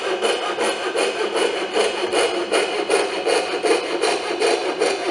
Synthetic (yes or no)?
no